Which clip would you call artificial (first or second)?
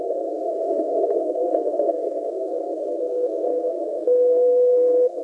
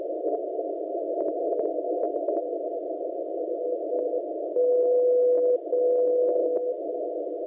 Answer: first